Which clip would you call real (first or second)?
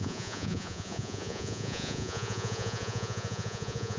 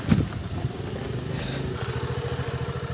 second